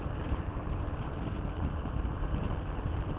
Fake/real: fake